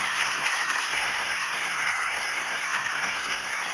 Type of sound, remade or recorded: remade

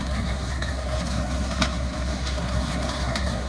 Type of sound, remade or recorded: remade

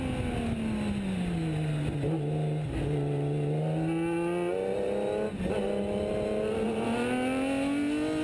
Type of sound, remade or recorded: recorded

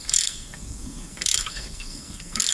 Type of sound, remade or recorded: remade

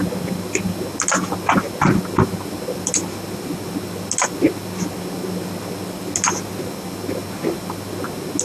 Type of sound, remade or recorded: recorded